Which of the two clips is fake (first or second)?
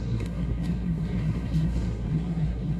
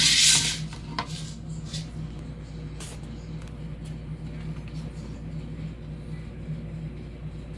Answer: first